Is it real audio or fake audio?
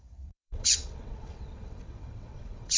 fake